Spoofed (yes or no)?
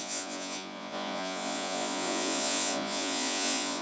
yes